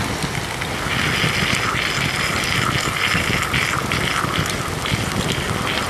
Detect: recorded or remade recorded